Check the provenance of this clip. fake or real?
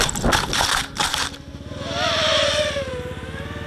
real